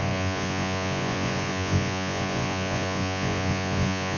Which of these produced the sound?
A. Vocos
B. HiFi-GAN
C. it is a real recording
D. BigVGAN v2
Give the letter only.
A